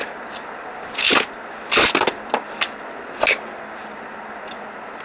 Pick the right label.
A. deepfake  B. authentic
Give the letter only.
B